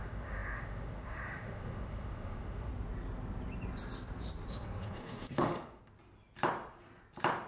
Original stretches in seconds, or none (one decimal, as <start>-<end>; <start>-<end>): 2.7-4.5; 5.8-7.5